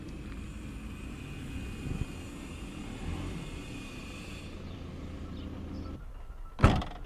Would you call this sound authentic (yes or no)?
no